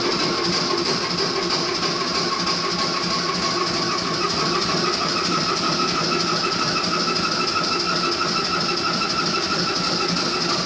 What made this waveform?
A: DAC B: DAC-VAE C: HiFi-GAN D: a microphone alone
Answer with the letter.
D